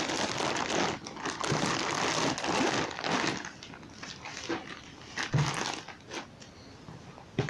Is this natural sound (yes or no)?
yes